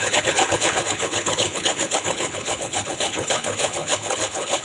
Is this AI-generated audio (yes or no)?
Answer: yes